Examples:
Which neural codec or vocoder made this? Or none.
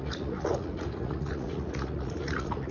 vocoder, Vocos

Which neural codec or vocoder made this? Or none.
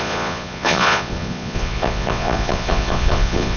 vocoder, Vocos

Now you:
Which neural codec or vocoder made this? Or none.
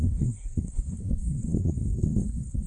codec, SNAC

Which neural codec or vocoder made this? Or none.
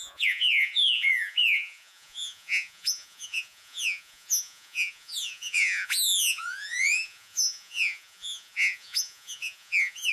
vocoder, Vocos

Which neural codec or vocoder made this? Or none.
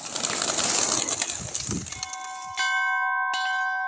none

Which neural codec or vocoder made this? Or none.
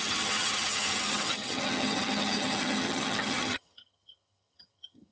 vocoder, HiFi-GAN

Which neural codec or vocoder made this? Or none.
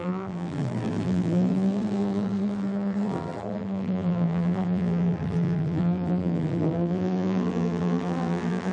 vocoder, BigVGAN v2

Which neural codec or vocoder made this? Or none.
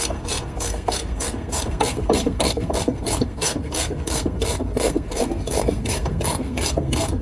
codec, SNAC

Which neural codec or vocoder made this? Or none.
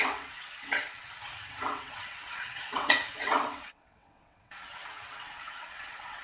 vocoder, WaveNeXt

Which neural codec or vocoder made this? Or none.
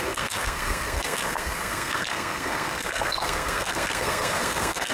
codec, SNAC